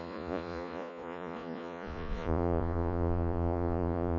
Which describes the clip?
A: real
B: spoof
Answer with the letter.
B